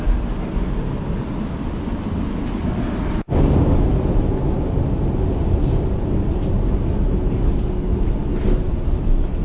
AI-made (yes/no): no